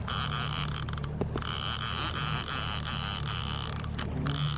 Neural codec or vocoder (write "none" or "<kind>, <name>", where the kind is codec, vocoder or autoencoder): none